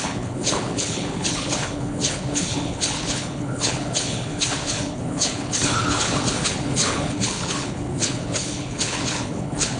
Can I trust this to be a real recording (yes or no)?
no